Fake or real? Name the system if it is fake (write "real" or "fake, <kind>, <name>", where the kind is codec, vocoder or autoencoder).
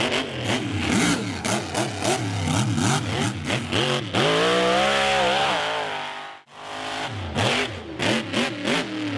real